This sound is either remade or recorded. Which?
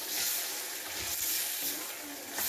recorded